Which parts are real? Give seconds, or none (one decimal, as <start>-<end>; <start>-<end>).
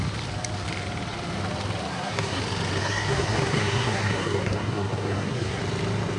0.0-1.9; 2.4-2.8; 5.6-6.2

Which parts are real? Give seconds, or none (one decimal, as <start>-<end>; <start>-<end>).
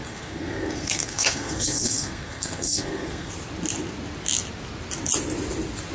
3.3-5.9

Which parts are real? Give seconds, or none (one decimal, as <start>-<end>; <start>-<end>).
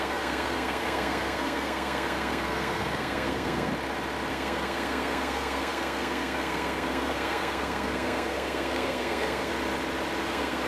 3.7-4.3; 9.5-10.2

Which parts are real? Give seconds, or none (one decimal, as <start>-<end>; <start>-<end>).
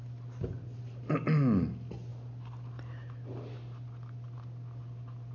0.0-5.3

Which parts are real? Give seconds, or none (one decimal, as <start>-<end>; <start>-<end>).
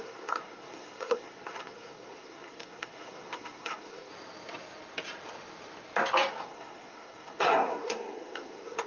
4.1-6.3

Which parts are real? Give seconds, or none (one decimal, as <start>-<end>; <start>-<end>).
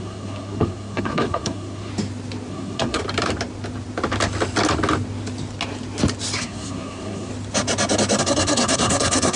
1.9-2.5; 3.0-6.4; 7.3-8.2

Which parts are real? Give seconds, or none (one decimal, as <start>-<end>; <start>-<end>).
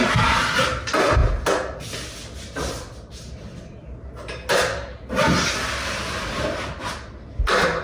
0.0-7.8